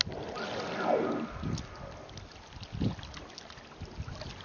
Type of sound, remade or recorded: recorded